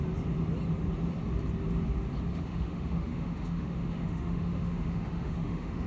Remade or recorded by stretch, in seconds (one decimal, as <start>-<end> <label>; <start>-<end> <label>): 0.0-2.3 recorded; 2.3-5.9 remade